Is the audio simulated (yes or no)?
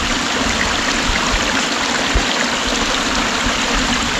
no